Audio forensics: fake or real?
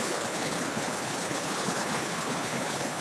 fake